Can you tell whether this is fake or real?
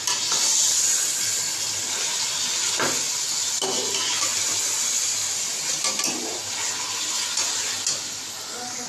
real